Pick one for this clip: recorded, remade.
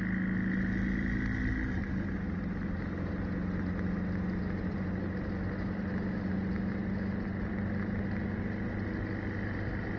recorded